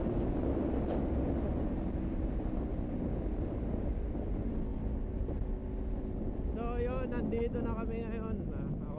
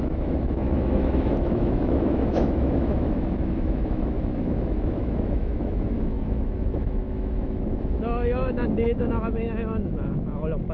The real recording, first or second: first